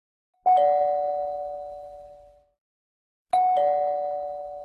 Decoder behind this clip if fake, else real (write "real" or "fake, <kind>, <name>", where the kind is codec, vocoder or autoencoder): real